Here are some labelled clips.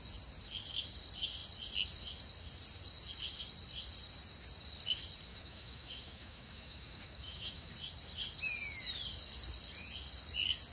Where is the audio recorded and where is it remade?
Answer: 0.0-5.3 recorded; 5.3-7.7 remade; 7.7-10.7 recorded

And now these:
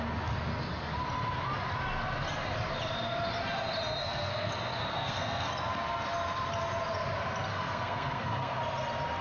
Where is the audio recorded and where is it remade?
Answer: 0.0-4.0 recorded; 4.0-4.5 remade; 4.5-4.9 recorded; 4.9-5.5 remade; 5.5-7.5 recorded; 7.5-8.6 remade; 8.6-9.2 recorded

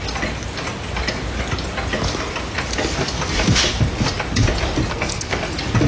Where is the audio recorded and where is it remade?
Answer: 0.0-4.9 recorded; 4.9-5.4 remade; 5.4-5.9 recorded

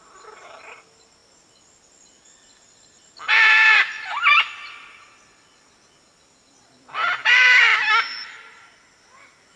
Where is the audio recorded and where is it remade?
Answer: 0.0-9.6 recorded

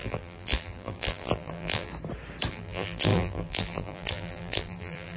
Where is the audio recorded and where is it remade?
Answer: 0.0-1.9 remade; 1.9-2.5 recorded; 2.5-5.2 remade